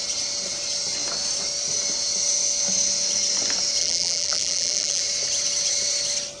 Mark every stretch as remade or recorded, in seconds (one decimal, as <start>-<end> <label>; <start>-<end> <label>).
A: 0.0-3.8 recorded; 3.8-5.0 remade; 5.0-6.4 recorded